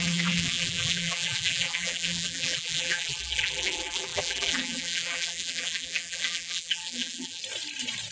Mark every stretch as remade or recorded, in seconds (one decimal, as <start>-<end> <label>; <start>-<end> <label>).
0.0-7.4 remade; 7.4-8.1 recorded